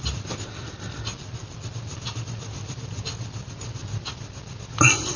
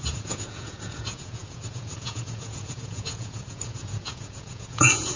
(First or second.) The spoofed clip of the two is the second